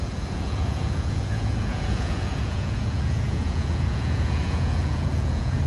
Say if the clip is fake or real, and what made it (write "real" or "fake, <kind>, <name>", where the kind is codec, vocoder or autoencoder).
fake, vocoder, Vocos